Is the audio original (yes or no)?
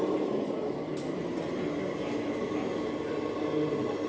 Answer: yes